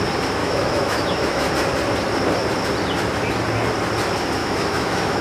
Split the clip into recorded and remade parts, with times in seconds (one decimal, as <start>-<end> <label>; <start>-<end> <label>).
0.0-0.4 recorded; 0.4-1.5 remade; 1.5-4.4 recorded; 4.4-5.2 remade